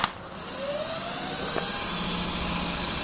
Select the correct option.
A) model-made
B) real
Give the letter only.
B